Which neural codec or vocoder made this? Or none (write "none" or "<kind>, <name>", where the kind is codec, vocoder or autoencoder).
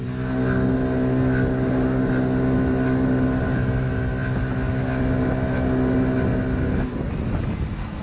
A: none